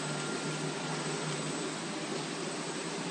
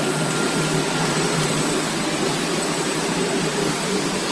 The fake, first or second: second